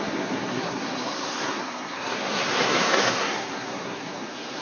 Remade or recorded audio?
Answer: remade